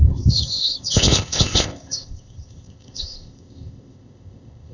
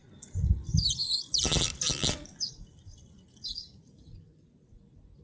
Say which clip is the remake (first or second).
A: first